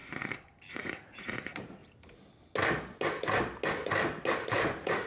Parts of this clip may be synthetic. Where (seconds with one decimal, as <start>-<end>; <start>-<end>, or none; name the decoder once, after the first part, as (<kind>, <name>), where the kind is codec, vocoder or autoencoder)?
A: 0.7-1.8 (vocoder, Vocos); 4.5-5.1